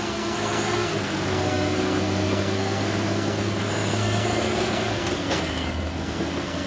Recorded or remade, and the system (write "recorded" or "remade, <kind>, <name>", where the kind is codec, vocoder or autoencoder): remade, codec, SNAC